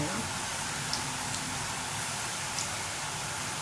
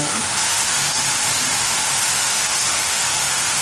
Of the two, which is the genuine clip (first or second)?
first